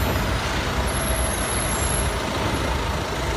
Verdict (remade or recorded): recorded